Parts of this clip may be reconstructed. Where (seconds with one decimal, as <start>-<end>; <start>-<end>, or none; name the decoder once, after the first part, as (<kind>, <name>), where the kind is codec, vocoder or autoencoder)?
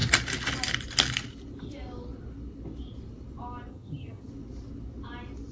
3.7-4.3 (vocoder, HiFi-GAN)